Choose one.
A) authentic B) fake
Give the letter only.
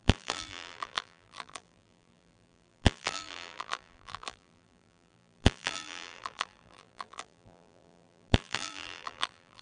B